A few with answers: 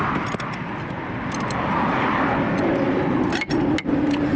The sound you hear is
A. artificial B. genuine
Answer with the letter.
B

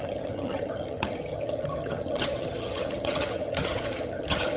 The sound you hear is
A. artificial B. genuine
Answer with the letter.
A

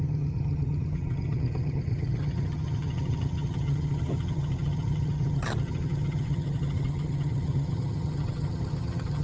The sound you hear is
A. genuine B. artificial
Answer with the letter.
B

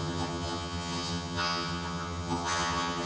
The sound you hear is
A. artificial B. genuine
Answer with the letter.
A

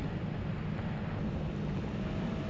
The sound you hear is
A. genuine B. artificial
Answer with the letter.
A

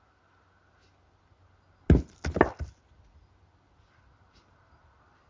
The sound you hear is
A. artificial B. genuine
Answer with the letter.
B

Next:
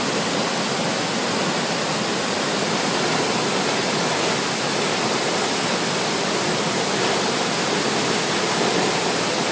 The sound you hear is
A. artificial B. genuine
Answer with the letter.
B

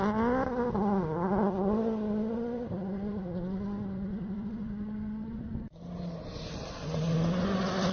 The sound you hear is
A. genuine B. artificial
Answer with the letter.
A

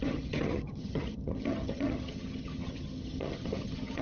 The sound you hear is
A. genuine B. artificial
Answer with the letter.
B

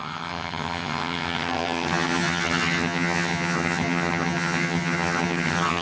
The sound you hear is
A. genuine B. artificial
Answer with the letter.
B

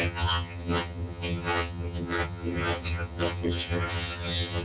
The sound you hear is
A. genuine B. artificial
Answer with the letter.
B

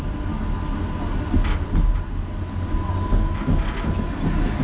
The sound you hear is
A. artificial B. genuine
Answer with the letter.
B